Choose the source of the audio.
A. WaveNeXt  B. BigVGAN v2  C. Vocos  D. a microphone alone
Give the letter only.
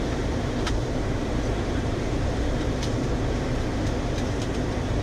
B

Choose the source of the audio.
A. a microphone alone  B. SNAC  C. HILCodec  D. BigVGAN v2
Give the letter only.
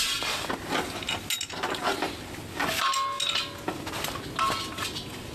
A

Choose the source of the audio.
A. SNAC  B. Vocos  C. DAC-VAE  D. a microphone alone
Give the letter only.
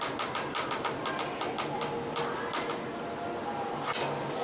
D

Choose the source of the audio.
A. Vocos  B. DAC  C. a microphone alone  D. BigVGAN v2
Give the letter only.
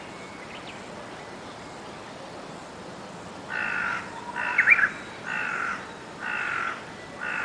C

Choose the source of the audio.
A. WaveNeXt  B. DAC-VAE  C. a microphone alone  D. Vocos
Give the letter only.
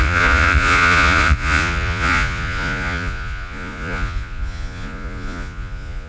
D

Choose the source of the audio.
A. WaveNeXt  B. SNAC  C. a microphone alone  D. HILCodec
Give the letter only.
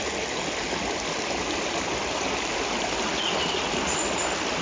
C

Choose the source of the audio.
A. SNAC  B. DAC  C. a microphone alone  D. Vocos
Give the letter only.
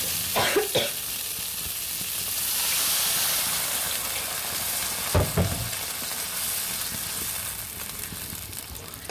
C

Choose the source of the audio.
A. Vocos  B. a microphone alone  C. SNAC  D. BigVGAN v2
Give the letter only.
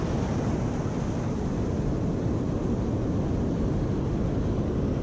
B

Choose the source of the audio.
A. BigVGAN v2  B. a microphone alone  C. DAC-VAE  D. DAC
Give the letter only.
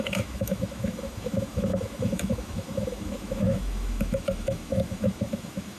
C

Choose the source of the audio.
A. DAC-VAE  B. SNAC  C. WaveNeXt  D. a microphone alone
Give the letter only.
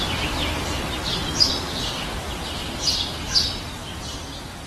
D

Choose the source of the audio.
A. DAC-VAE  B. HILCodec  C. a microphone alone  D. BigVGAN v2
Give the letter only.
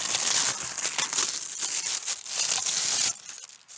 C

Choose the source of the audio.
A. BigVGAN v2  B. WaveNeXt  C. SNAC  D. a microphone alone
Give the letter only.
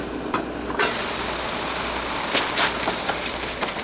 D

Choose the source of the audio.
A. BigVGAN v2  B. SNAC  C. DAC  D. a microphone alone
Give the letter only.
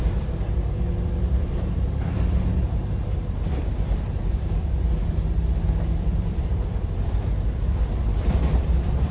A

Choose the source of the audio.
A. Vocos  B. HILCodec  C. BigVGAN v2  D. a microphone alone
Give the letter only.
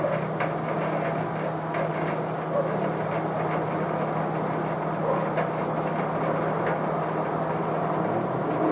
D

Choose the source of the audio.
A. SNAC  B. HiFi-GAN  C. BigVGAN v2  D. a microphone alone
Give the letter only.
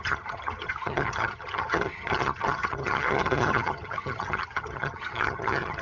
B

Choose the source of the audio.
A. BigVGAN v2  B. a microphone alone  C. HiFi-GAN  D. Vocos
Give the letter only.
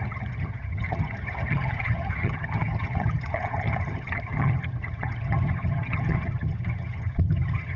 C